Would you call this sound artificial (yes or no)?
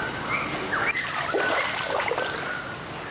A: no